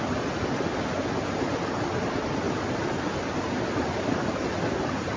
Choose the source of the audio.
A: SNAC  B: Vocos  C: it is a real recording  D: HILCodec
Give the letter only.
C